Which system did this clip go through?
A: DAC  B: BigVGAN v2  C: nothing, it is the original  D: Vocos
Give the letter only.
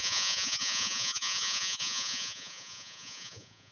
D